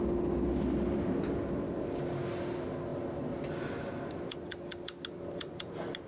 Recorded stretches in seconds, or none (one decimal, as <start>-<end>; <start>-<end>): 0.0-6.1